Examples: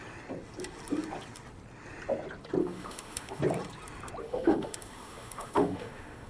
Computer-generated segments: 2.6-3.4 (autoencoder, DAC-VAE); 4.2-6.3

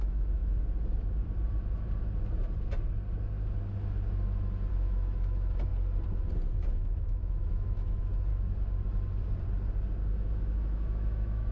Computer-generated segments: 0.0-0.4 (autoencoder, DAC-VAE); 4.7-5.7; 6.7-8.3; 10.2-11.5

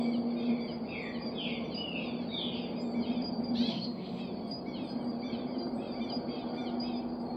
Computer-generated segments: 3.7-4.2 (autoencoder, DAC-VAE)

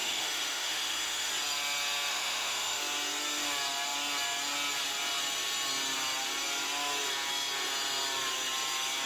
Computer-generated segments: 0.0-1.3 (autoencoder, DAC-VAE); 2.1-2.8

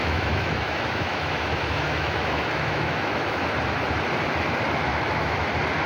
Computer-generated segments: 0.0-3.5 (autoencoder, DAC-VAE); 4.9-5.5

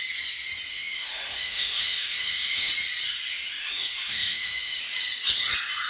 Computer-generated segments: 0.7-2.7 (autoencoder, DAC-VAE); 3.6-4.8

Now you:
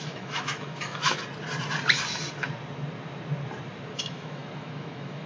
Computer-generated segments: 0.0-1.2 (autoencoder, DAC-VAE); 3.9-5.3

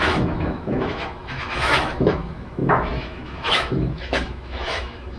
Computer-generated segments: 0.0-5.2 (autoencoder, DAC-VAE)